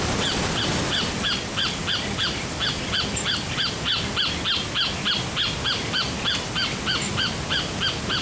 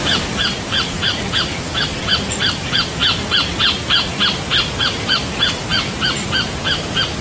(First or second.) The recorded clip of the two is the first